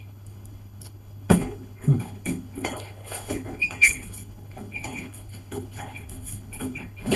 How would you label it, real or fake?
fake